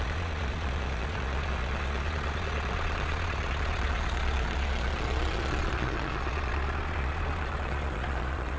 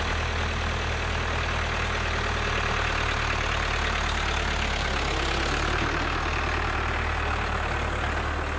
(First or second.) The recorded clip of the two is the second